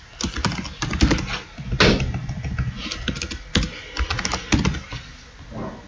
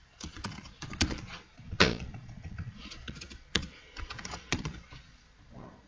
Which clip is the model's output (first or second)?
second